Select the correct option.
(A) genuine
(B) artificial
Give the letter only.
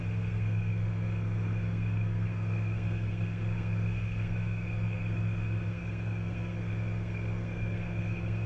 B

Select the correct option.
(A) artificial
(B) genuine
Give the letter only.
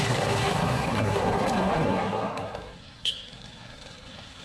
A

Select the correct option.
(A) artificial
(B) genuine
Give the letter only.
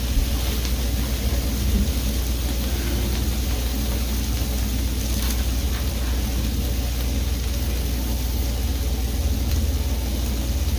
B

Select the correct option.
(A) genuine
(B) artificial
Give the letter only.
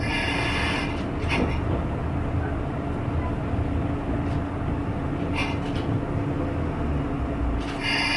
A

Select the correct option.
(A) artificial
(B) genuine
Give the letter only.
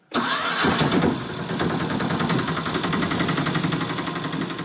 B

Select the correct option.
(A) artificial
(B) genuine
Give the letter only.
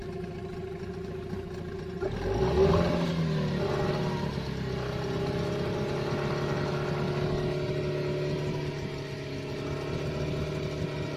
B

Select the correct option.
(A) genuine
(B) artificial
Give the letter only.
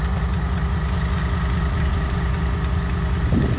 A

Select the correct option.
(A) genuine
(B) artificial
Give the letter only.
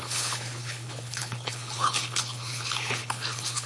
B